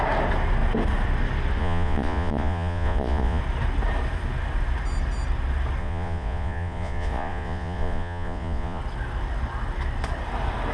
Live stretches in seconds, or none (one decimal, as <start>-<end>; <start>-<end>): 0.0-1.6; 3.4-5.8; 8.8-10.7